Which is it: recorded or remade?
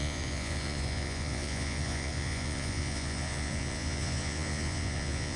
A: remade